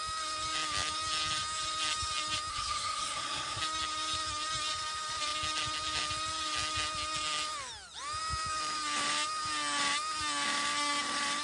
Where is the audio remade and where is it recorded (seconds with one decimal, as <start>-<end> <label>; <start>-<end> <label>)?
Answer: 0.0-2.5 recorded; 2.5-3.6 remade; 3.6-11.4 recorded